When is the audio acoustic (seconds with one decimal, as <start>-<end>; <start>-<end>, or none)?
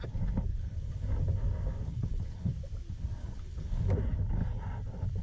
0.0-0.5; 1.1-1.8; 2.5-3.2; 3.8-5.2